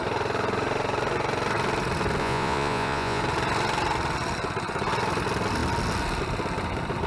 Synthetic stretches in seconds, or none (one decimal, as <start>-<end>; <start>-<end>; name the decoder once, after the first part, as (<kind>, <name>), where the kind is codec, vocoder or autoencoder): 2.2-3.2 (vocoder, Vocos)